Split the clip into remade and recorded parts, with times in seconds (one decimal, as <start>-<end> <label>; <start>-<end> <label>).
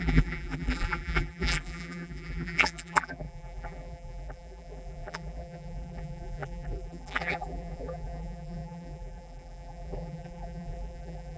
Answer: 0.0-11.4 remade